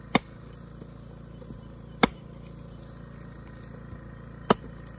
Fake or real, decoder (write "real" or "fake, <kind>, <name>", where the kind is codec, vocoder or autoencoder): real